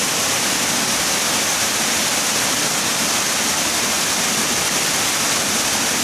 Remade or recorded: recorded